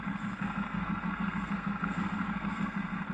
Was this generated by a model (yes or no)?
yes